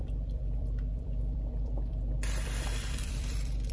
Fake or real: fake